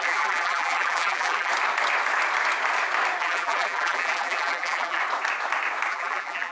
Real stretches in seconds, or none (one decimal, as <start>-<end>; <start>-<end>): 1.5-3.2; 5.0-5.9